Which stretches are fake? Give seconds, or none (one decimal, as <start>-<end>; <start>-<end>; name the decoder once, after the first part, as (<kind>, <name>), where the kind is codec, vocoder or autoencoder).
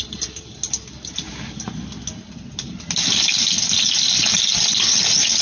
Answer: none